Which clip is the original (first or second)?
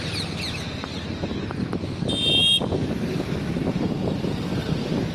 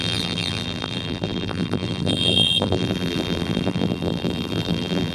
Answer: first